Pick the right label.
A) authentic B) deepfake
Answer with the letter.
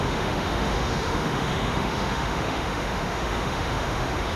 B